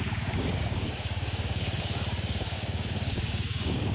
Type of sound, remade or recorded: remade